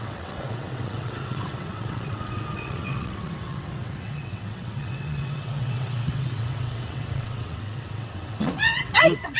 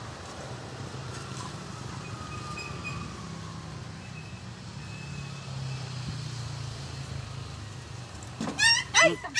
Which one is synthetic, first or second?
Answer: first